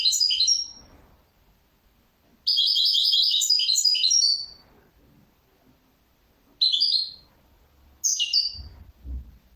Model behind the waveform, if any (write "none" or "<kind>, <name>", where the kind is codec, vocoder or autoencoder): none